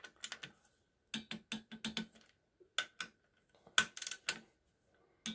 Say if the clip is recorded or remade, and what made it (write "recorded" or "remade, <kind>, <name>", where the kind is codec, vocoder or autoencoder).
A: recorded